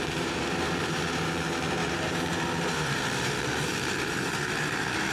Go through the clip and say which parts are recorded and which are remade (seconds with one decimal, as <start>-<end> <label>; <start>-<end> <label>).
0.0-5.1 remade